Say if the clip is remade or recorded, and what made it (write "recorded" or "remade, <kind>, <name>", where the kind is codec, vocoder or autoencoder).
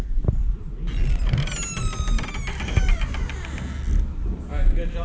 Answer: recorded